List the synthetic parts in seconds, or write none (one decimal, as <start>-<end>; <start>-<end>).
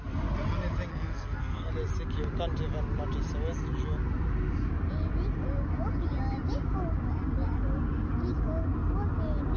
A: 0.9-1.7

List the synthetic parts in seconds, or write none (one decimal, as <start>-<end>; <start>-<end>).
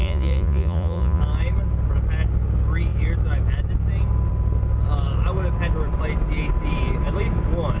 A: 0.0-1.2